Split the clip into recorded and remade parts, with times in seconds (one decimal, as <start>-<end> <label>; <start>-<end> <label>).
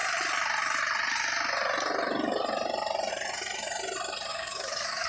0.0-4.3 recorded; 4.3-5.1 remade